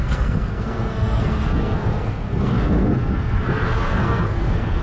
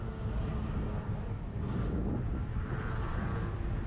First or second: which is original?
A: second